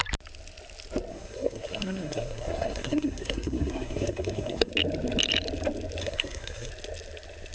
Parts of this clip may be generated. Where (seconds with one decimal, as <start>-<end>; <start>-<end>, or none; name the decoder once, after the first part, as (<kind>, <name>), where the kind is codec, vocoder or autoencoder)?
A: 1.1-4.7 (codec, SNAC); 6.0-6.7